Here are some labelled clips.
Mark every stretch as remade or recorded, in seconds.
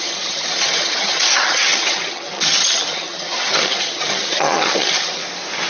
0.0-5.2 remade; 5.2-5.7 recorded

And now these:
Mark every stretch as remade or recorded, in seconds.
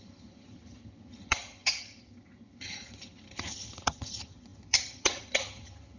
0.0-6.0 remade